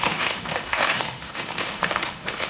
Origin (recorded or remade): remade